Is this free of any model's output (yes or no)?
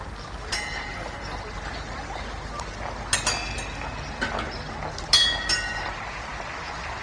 yes